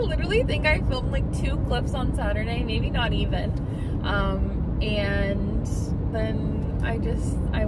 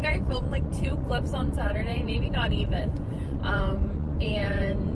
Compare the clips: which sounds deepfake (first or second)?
second